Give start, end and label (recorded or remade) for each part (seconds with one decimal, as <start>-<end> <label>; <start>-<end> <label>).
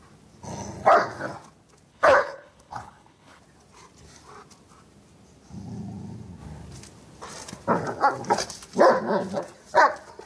0.0-1.9 recorded; 1.9-3.4 remade; 3.4-10.3 recorded